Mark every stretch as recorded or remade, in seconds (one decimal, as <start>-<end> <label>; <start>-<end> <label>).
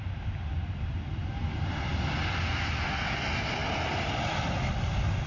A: 0.0-3.6 recorded; 3.6-5.3 remade